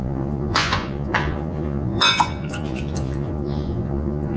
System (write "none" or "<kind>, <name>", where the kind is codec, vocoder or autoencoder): vocoder, Vocos